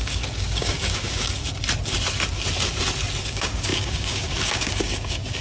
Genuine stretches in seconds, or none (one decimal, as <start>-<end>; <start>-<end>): 1.4-3.2